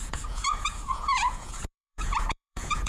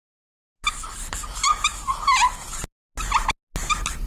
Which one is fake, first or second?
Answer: first